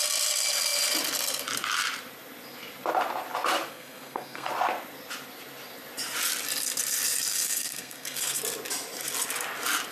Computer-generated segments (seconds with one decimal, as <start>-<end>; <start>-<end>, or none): 3.7-4.5; 7.3-8.4